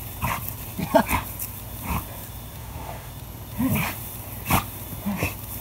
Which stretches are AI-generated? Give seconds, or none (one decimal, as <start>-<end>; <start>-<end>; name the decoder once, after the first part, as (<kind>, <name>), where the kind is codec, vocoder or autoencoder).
2.6-3.1 (autoencoder, DAC-VAE)